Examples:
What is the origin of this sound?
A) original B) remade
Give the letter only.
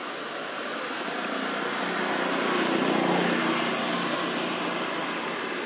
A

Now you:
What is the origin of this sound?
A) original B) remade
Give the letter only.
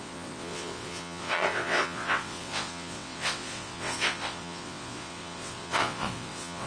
B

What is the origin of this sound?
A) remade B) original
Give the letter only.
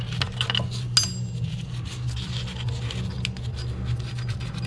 B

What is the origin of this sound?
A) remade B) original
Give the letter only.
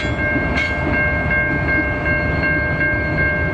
B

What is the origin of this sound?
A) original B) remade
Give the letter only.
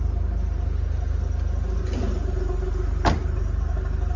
A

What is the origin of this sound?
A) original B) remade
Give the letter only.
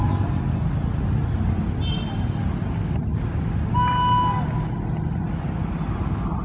A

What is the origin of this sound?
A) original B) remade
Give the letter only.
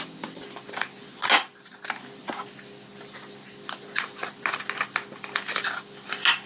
A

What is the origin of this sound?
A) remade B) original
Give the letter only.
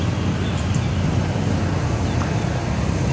B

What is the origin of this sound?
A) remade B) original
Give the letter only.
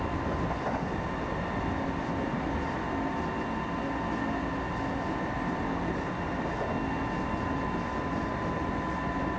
B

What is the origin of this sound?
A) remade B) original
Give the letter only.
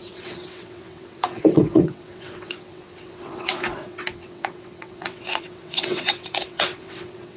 A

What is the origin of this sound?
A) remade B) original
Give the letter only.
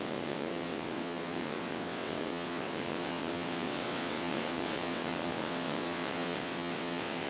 A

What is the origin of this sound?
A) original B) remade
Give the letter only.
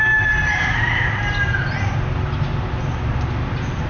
A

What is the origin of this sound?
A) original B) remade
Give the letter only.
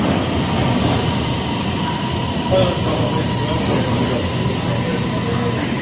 A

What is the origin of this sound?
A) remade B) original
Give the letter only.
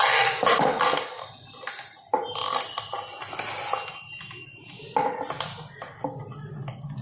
B